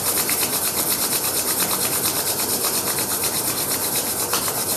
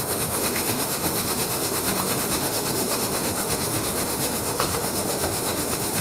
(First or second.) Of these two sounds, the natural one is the first